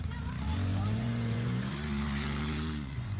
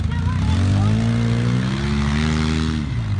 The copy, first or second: first